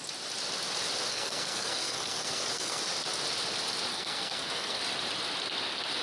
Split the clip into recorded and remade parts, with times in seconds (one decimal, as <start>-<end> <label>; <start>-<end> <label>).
0.0-1.1 recorded; 1.1-2.8 remade; 2.8-3.9 recorded; 3.9-4.8 remade; 4.8-6.0 recorded